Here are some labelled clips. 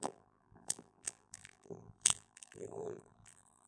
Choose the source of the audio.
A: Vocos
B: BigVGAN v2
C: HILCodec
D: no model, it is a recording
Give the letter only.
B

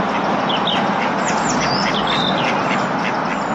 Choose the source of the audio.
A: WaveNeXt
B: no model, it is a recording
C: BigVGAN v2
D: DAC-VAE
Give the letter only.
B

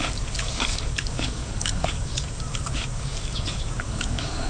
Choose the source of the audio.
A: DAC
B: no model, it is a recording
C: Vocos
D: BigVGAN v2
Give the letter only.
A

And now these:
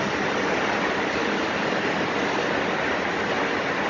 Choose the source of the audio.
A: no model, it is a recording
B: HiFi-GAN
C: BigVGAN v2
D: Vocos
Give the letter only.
A